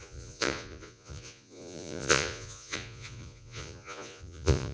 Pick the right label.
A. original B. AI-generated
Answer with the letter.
B